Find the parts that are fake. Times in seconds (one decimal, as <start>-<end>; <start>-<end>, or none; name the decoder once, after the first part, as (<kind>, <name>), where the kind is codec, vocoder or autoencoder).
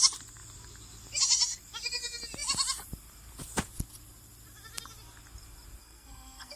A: 5.8-6.6 (codec, SNAC)